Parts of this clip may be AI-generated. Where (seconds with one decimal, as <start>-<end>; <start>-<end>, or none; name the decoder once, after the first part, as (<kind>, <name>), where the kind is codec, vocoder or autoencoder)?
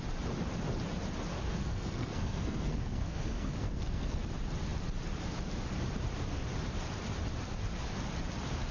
1.5-4.2 (codec, SNAC)